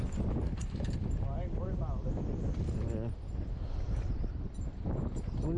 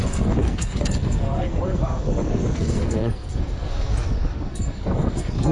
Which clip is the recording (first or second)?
first